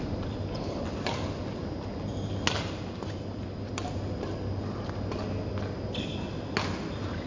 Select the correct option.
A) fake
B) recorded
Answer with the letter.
B